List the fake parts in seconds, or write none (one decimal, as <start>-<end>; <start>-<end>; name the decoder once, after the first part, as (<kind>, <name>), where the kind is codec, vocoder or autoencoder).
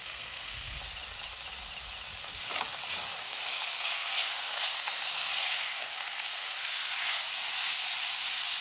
0.0-0.8 (codec, SNAC); 3.2-6.9